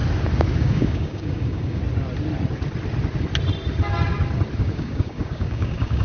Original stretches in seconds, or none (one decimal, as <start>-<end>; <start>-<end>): 0.0-0.6; 1.8-4.6